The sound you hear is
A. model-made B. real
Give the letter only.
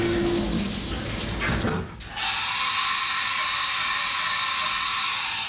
B